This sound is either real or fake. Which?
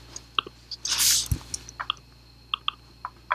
real